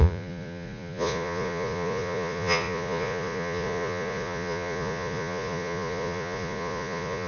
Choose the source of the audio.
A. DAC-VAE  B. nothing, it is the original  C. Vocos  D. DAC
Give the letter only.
C